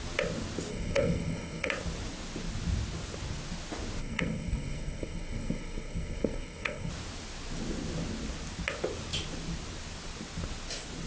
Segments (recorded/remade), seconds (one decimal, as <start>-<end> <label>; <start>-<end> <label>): 0.0-0.7 recorded; 0.7-1.7 remade; 1.7-4.0 recorded; 4.0-6.9 remade; 6.9-11.1 recorded